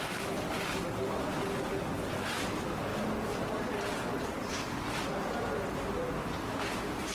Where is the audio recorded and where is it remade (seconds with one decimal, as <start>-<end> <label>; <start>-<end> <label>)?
0.0-7.1 recorded